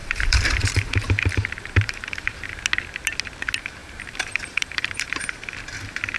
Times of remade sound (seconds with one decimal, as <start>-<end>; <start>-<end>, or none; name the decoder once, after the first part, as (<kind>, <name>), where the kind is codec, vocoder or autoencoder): 0.0-2.6 (vocoder, BigVGAN v2); 3.8-5.3

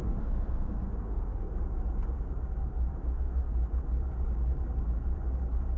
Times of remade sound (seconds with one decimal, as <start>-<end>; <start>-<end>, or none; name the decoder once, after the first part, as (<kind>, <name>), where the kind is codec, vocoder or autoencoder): 0.0-1.5 (autoencoder, DAC-VAE); 2.6-3.5

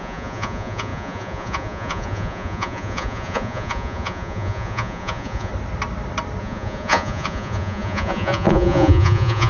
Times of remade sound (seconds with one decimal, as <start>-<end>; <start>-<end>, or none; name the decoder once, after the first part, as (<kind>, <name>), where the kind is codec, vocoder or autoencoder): 0.0-5.5 (vocoder, Vocos); 6.4-9.5

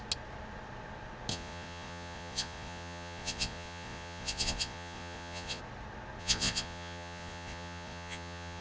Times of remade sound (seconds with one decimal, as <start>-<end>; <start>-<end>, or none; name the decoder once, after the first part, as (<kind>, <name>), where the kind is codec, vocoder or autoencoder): 1.3-5.6 (vocoder, Vocos); 6.2-8.6

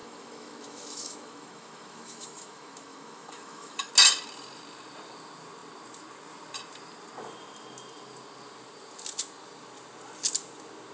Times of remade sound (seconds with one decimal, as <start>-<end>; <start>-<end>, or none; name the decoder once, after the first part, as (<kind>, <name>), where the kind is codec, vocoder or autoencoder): 0.0-3.9 (autoencoder, DAC-VAE)

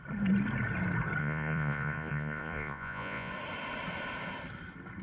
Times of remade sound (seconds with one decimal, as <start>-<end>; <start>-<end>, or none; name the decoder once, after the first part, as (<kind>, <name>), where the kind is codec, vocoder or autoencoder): 1.2-3.3 (vocoder, Vocos)

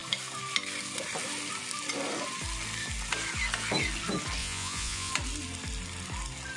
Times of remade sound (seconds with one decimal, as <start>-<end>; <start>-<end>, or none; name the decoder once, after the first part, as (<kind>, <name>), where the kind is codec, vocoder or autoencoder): 4.4-5.1 (vocoder, Vocos)

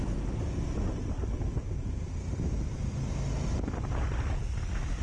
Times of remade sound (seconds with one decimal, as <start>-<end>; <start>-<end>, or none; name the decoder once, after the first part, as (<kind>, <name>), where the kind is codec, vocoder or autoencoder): none